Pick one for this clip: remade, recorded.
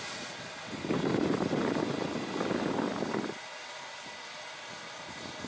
recorded